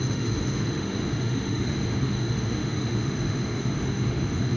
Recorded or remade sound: remade